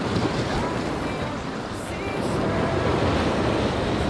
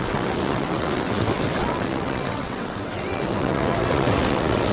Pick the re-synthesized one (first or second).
second